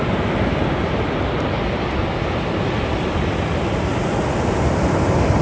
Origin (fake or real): real